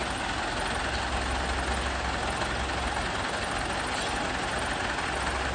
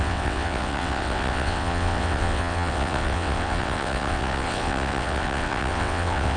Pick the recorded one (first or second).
first